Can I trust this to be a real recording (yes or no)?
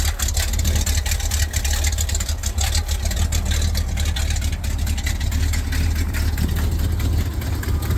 yes